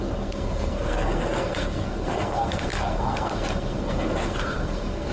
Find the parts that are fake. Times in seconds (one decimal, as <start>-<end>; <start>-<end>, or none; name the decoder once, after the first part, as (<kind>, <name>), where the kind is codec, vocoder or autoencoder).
0.0-5.1 (codec, SNAC)